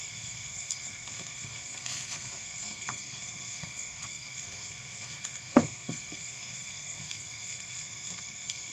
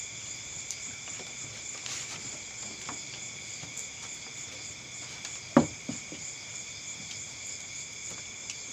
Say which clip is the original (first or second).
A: second